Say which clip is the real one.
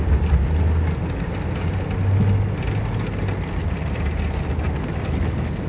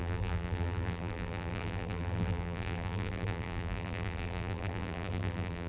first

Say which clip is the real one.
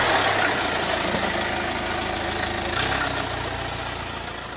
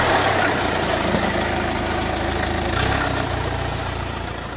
first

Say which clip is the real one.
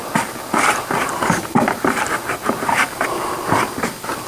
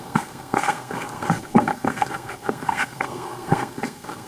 first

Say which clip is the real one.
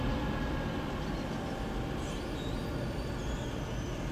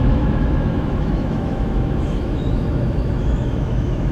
first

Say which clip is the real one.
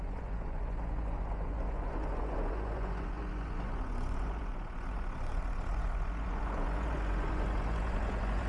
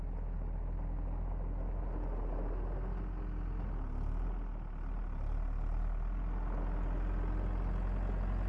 second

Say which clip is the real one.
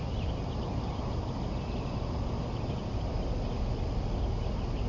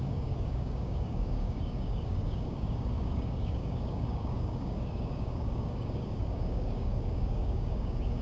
first